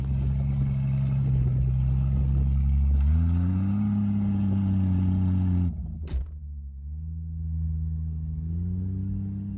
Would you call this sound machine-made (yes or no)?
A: no